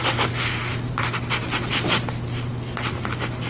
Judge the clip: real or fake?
real